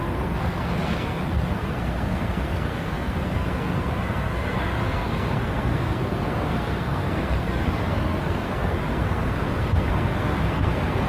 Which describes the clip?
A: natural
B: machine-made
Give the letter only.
B